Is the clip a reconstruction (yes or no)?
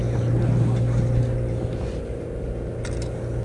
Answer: no